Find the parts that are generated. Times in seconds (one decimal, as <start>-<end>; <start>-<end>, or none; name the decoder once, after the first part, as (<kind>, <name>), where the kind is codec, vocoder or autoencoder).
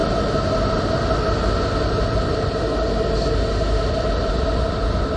none